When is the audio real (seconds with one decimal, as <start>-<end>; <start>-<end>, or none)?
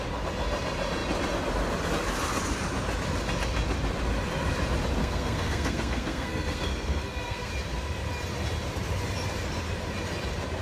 0.0-5.0; 7.5-10.6